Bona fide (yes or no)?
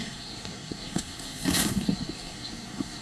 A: no